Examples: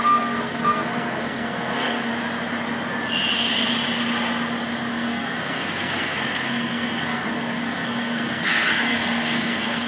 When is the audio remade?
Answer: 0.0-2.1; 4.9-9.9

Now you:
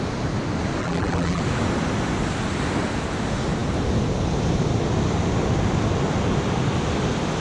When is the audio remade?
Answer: 0.8-1.4

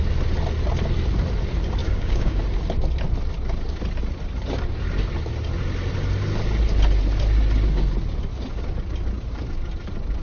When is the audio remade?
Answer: 1.8-2.4

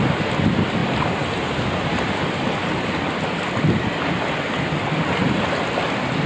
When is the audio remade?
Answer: none